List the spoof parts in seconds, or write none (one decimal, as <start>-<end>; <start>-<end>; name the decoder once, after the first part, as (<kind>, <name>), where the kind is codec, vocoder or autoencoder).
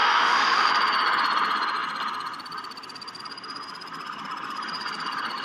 0.0-0.7 (autoencoder, DAC-VAE)